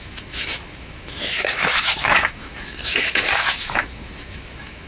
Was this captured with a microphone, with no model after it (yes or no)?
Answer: no